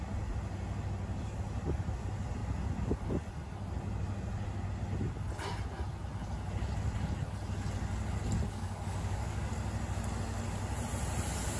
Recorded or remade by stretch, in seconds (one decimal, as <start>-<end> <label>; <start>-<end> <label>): 0.0-8.5 recorded; 8.5-9.5 remade; 9.5-11.6 recorded